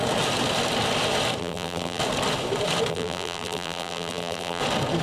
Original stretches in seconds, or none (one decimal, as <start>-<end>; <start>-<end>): 0.0-1.4; 2.0-2.9; 4.6-5.0